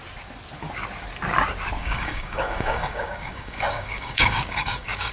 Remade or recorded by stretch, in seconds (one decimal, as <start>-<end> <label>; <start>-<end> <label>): 0.0-1.8 recorded; 1.8-5.1 remade